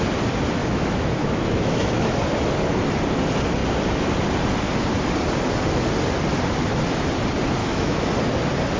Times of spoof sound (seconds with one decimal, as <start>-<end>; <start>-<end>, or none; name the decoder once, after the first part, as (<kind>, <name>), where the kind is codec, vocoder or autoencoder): 0.6-2.1 (autoencoder, DAC-VAE); 7.6-8.1